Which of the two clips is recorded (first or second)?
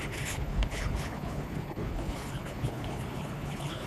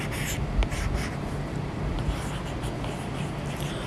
second